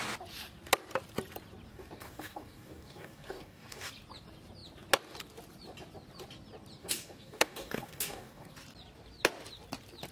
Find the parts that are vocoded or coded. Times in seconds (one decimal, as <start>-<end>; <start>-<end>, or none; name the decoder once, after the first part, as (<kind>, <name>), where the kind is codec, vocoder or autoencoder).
1.7-3.9 (codec, DAC); 6.8-8.5